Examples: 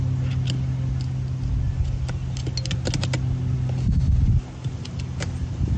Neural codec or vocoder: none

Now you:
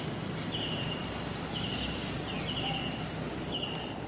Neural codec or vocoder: none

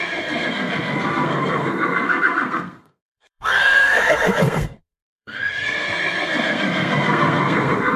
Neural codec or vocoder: codec, SNAC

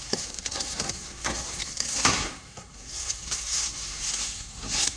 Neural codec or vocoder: codec, SNAC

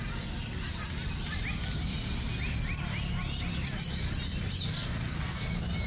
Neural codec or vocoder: none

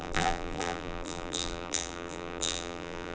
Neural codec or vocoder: vocoder, BigVGAN v2